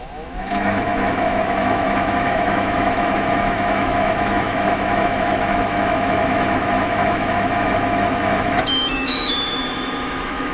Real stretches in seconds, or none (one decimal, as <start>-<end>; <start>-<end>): none